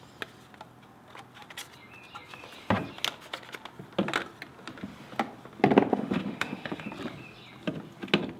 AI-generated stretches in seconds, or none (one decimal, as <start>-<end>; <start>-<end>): 5.9-6.9